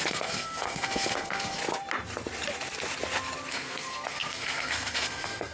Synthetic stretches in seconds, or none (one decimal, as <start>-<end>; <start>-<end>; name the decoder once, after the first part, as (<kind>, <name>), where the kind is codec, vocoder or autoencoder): 0.0-1.6 (codec, SNAC); 3.5-5.5